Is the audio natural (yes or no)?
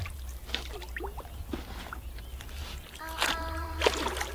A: yes